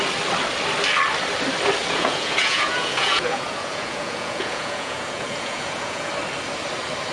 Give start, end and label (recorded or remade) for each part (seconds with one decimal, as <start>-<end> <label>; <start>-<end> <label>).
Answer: 0.0-1.8 recorded; 1.8-6.1 remade; 6.1-7.1 recorded